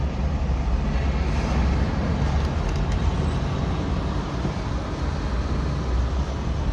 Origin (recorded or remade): recorded